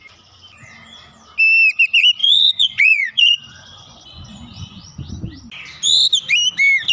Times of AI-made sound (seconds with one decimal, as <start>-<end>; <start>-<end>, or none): 2.2-5.1